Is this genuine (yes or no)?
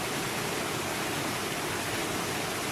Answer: yes